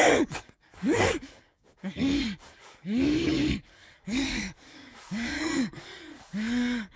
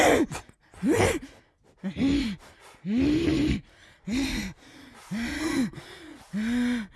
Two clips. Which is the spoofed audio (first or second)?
first